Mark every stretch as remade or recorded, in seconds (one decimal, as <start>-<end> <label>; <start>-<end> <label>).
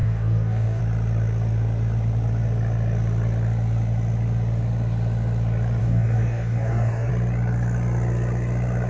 0.0-0.8 remade; 0.8-5.8 recorded; 5.8-7.1 remade; 7.1-8.9 recorded